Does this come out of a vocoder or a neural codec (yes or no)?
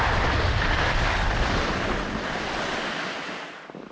no